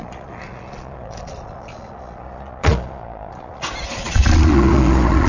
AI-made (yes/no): yes